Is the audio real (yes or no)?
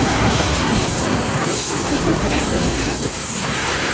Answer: no